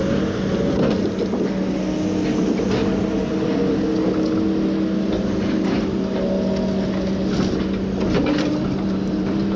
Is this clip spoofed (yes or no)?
no